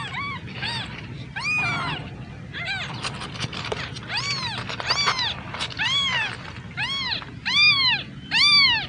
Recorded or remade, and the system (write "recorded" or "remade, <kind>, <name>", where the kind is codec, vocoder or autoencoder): recorded